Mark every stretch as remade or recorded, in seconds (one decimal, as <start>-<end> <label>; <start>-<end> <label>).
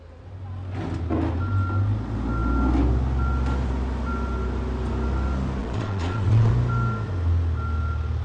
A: 0.0-5.6 recorded; 5.6-6.5 remade; 6.5-8.2 recorded